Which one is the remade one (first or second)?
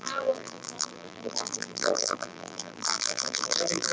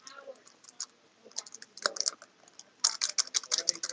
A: first